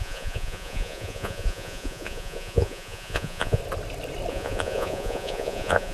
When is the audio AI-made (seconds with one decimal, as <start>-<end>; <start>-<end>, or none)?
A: 0.0-3.6; 4.3-5.9

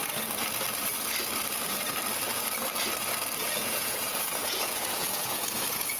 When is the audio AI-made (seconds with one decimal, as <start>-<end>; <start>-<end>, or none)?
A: 3.6-6.0

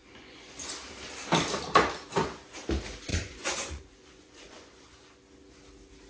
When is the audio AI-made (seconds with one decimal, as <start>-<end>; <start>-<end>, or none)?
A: 0.0-0.7; 3.1-5.2

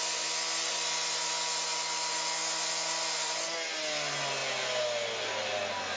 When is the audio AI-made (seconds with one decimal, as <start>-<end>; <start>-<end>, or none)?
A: none

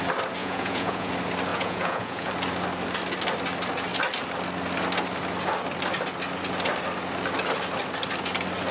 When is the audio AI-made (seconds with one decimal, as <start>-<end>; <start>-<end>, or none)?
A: 0.4-1.1; 1.5-2.3